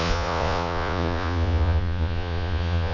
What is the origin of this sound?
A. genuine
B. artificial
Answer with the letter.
B